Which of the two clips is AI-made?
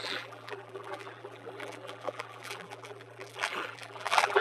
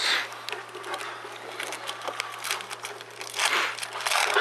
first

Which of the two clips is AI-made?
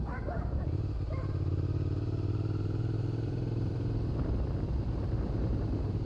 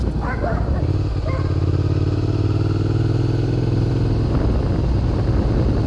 first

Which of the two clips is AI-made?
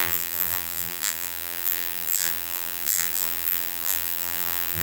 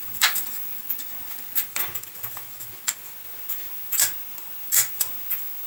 first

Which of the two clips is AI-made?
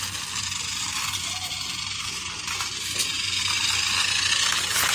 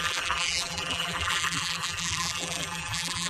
second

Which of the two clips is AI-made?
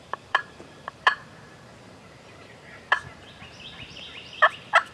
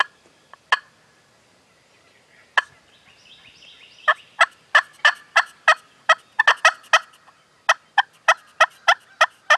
first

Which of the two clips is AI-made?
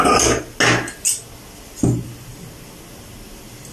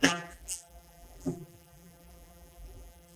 second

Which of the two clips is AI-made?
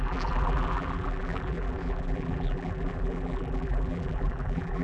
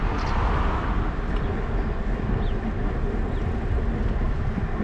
first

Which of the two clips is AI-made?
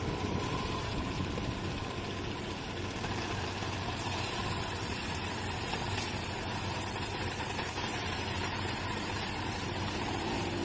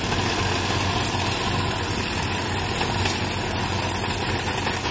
first